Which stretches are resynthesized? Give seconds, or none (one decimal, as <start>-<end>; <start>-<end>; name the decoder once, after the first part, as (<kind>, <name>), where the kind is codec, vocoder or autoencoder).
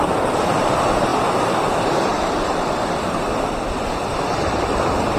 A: none